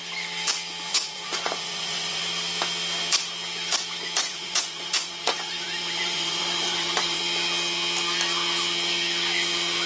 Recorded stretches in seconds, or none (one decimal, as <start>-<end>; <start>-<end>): 0.0-0.9; 2.2-4.2; 7.2-9.9